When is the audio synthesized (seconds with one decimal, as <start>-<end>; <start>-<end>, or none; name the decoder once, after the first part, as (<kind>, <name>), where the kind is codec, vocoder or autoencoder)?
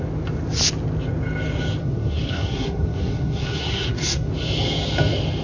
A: 1.8-4.3 (codec, SNAC)